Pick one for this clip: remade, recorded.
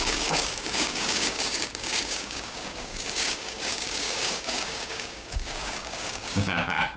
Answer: remade